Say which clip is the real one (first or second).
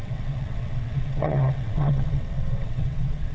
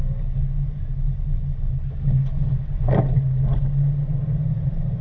second